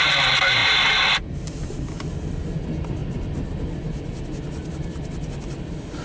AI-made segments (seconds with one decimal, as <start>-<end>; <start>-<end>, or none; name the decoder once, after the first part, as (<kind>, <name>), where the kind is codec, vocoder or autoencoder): none